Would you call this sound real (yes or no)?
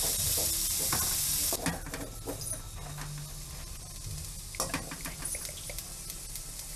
yes